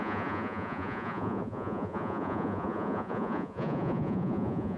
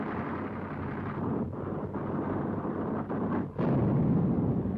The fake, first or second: first